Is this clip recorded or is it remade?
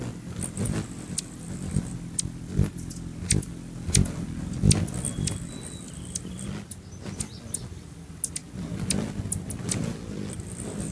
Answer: recorded